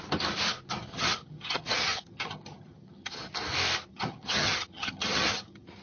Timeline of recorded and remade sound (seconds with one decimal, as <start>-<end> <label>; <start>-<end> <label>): 0.0-0.9 recorded; 0.9-3.3 remade; 3.3-3.9 recorded; 3.9-5.8 remade